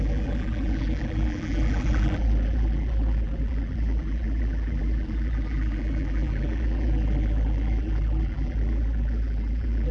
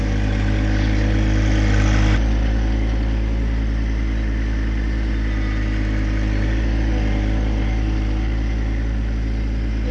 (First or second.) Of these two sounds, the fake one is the first